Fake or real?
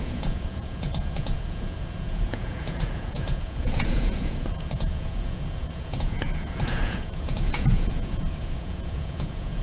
fake